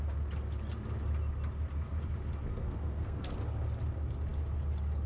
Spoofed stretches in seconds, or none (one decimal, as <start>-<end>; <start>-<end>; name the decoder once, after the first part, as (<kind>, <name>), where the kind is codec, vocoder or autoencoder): 2.5-3.3 (codec, SNAC)